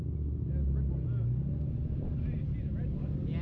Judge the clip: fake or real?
real